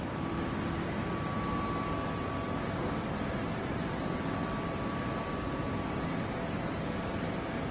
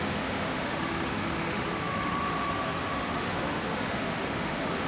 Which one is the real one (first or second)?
first